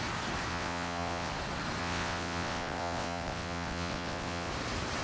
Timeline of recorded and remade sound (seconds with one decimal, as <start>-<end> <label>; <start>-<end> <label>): 0.0-0.5 recorded; 0.5-1.3 remade; 1.3-1.8 recorded; 1.8-4.5 remade; 4.5-5.0 recorded